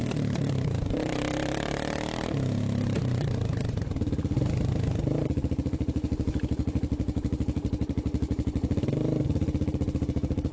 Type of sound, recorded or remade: remade